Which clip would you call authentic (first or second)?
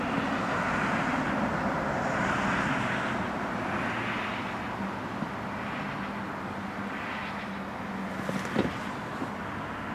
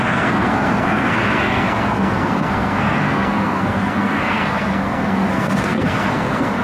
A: first